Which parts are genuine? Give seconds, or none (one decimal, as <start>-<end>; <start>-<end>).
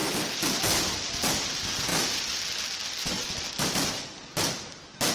0.0-5.1